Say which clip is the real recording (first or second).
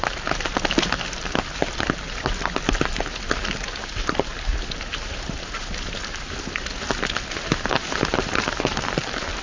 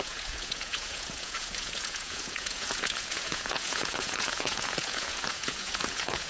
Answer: first